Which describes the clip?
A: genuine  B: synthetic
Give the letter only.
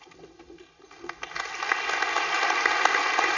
A